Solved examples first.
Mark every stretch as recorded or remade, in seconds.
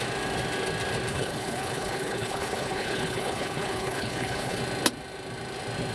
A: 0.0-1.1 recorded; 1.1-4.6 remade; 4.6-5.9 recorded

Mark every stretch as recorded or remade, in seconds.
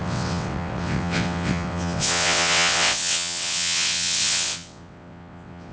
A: 0.0-5.7 remade